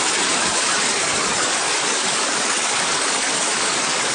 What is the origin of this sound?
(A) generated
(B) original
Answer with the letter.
A